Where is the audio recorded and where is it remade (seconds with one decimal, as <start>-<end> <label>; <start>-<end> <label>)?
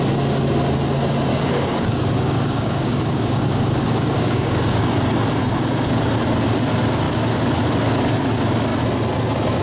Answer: 0.0-1.3 recorded; 1.3-4.8 remade; 4.8-5.4 recorded; 5.4-6.0 remade; 6.0-9.6 recorded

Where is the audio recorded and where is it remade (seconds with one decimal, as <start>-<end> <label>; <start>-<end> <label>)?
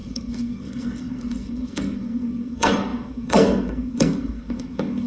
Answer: 0.0-5.1 remade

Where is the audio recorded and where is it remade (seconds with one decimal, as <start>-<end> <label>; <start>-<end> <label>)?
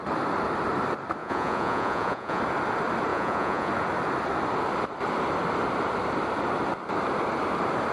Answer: 0.0-1.2 recorded; 1.2-2.4 remade; 2.4-3.1 recorded; 3.1-3.7 remade; 3.7-7.9 recorded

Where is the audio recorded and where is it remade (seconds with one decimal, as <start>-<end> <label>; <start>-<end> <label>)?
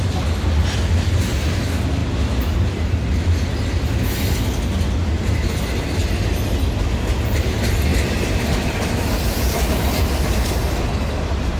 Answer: 0.0-7.9 recorded; 7.9-10.5 remade; 10.5-11.6 recorded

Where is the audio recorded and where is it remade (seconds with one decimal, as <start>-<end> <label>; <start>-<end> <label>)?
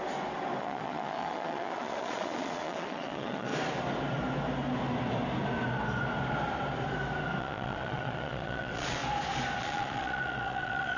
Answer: 0.0-0.6 recorded; 0.6-3.5 remade; 3.5-7.4 recorded; 7.4-9.0 remade; 9.0-9.6 recorded; 9.6-11.0 remade